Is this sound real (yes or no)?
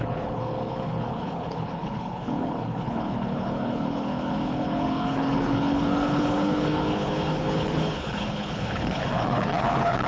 no